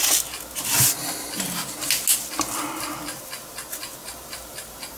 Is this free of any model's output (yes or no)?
yes